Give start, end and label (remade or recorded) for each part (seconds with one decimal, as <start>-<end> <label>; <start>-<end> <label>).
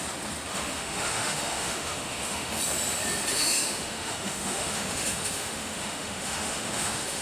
0.0-0.5 recorded; 0.5-2.6 remade; 2.6-3.3 recorded; 3.3-7.2 remade